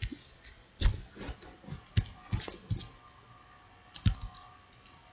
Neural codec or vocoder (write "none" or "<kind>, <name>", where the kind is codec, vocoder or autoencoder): none